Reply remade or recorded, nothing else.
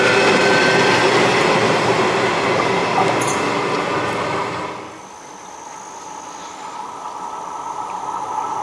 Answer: recorded